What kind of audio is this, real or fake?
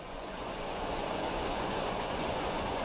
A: fake